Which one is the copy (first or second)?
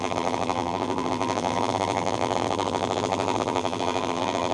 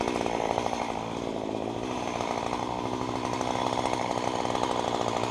first